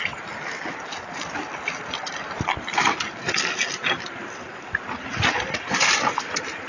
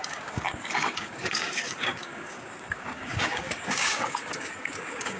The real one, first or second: first